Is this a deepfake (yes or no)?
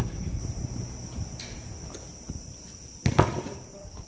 no